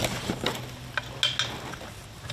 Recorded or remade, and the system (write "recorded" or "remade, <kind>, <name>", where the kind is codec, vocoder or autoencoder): recorded